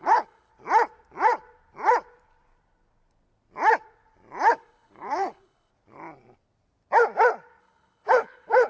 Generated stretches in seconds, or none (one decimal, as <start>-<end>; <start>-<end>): 0.0-0.5; 4.5-5.7; 7.6-8.7